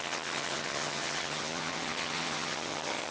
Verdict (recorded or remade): remade